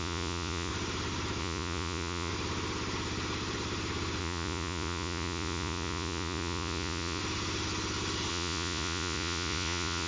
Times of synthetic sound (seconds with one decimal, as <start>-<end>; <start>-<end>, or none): 0.0-0.7; 1.4-2.3; 4.2-7.2; 8.3-10.1